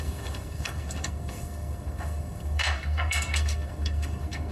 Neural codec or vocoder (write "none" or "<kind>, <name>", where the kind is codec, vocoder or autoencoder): codec, SNAC